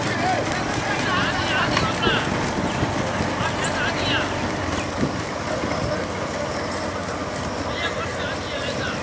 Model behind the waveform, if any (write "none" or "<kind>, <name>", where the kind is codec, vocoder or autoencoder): none